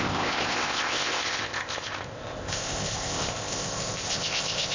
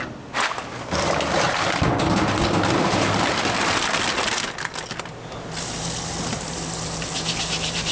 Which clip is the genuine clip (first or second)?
second